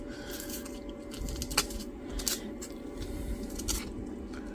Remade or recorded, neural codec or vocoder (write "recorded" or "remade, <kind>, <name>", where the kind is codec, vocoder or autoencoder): recorded